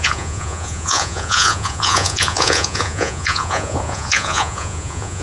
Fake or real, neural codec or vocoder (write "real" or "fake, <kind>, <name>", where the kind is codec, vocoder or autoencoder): fake, vocoder, Vocos